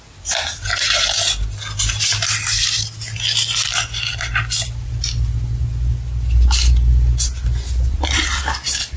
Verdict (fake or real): real